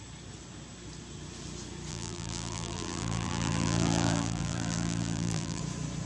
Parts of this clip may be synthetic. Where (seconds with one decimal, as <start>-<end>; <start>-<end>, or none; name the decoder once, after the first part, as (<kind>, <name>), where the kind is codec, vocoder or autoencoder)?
1.9-5.6 (vocoder, BigVGAN v2)